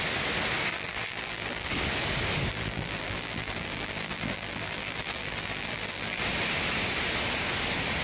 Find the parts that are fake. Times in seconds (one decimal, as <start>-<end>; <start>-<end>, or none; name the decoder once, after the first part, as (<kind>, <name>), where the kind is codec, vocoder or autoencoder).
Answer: 0.7-1.7 (vocoder, BigVGAN v2); 2.5-6.2

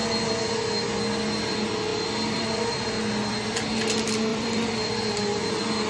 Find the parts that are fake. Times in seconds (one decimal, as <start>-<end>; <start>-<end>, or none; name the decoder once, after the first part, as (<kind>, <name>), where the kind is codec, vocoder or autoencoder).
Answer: 1.9-3.0 (vocoder, BigVGAN v2); 4.3-5.2

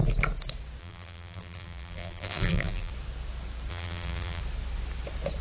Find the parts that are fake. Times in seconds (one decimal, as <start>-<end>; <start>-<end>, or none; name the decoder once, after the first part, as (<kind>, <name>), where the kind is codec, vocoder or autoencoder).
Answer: 0.8-2.9 (vocoder, BigVGAN v2); 3.7-4.4

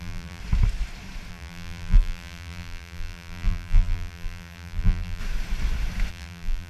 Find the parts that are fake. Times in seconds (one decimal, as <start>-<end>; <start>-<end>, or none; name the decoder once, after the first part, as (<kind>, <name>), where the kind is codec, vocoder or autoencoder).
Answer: 0.0-0.4 (vocoder, BigVGAN v2); 1.3-5.2; 6.1-6.7

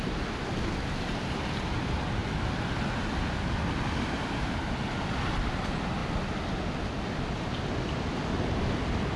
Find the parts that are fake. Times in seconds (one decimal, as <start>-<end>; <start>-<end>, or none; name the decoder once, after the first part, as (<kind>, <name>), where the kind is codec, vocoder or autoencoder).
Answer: none

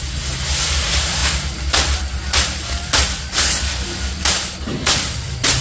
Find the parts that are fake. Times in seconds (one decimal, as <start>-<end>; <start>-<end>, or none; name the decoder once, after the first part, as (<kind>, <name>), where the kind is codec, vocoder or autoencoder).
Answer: none